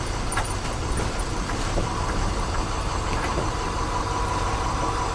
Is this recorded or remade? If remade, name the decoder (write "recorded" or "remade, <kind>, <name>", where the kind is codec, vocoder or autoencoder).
remade, vocoder, BigVGAN v2